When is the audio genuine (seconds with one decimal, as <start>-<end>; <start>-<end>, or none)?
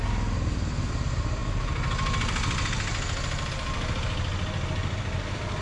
0.0-5.6